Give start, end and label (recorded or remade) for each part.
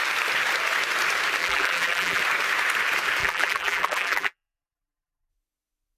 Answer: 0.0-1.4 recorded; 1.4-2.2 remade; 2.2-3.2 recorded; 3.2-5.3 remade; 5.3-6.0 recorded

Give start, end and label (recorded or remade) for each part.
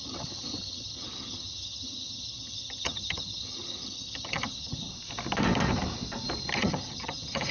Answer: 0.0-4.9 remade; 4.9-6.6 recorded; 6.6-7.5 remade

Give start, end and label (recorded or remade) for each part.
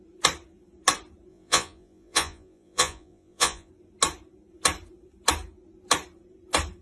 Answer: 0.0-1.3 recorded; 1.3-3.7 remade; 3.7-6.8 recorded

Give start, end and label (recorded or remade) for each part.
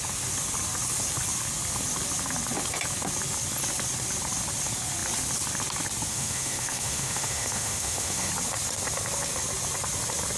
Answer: 0.0-6.1 recorded; 6.1-8.3 remade; 8.3-10.4 recorded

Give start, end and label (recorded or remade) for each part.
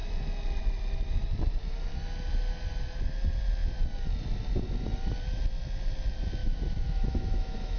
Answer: 0.0-6.4 recorded; 6.4-7.8 remade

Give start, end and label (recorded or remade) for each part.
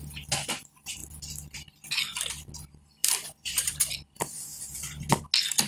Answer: 0.0-3.0 recorded; 3.0-3.8 remade; 3.8-5.7 recorded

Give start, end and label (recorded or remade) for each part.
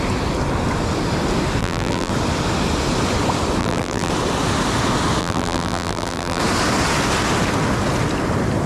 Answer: 0.0-1.6 recorded; 1.6-2.1 remade; 2.1-3.6 recorded; 3.6-4.1 remade; 4.1-5.2 recorded; 5.2-6.4 remade; 6.4-8.7 recorded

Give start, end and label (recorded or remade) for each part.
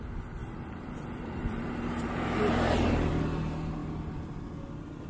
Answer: 0.0-0.4 recorded; 0.4-3.1 remade; 3.1-5.1 recorded